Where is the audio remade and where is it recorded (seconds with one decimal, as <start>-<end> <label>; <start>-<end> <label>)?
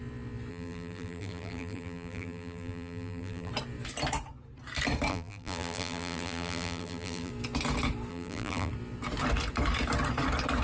0.0-0.5 recorded; 0.5-3.5 remade; 3.5-5.1 recorded; 5.1-7.3 remade; 7.3-8.1 recorded; 8.1-8.7 remade; 8.7-10.6 recorded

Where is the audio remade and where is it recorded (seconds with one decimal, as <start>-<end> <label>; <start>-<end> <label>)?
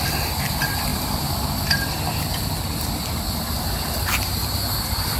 0.0-5.2 recorded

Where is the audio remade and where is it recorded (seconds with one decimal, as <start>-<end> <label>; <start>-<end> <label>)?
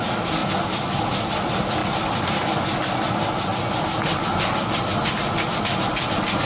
0.0-1.8 recorded; 1.8-2.4 remade; 2.4-6.5 recorded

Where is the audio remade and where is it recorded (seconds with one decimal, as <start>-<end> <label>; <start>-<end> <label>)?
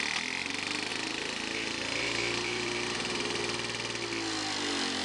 0.0-0.9 recorded; 0.9-3.4 remade; 3.4-5.0 recorded